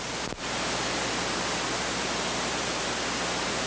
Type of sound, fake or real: real